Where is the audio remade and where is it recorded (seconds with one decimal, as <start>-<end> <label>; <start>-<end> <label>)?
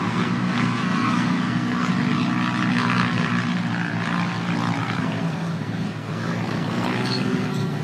0.0-1.9 remade; 1.9-2.7 recorded; 2.7-3.3 remade; 3.3-4.8 recorded; 4.8-7.8 remade